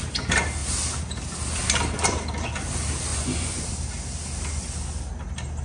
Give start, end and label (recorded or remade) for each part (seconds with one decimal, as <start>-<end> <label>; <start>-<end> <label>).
0.0-3.1 recorded; 3.1-3.6 remade; 3.6-5.6 recorded